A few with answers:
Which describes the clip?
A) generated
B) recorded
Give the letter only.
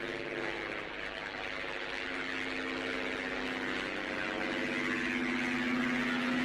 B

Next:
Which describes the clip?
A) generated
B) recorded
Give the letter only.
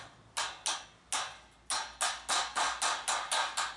B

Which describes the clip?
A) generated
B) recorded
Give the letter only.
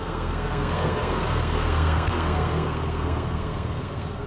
A